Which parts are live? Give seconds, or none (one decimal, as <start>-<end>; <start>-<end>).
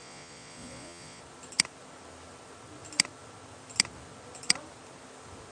1.2-5.5